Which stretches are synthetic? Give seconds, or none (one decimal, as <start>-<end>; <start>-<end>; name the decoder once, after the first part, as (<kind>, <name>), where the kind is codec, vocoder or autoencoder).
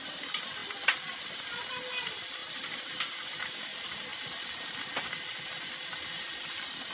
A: none